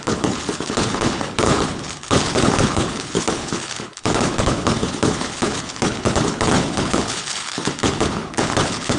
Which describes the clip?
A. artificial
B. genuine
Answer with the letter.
A